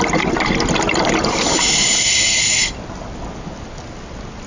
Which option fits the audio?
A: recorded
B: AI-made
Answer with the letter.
A